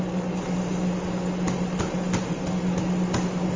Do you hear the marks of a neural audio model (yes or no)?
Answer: no